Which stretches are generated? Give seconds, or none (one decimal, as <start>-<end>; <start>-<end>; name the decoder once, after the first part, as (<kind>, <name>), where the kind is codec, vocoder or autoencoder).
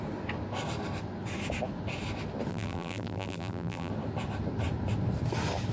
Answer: 2.5-3.9 (vocoder, BigVGAN v2)